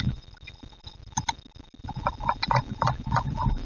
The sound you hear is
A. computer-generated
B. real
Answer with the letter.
B